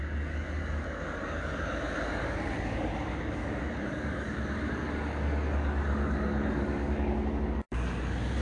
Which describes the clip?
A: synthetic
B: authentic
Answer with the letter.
A